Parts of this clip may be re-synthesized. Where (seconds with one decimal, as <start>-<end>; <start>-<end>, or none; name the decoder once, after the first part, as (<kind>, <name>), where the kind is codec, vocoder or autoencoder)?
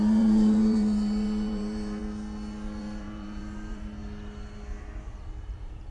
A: 0.0-2.0 (vocoder, BigVGAN v2); 2.8-4.0; 4.8-5.9